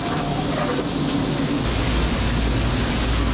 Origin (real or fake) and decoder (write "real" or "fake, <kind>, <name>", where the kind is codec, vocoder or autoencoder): real